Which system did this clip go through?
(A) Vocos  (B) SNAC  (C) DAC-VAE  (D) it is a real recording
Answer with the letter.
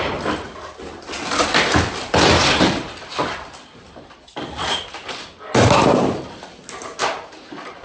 D